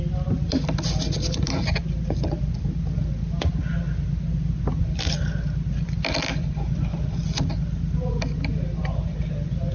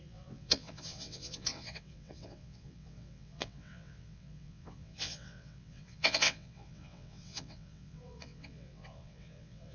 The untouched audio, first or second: first